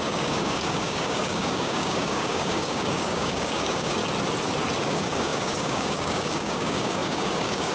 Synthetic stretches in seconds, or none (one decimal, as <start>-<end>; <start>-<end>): 0.0-4.0; 4.8-7.7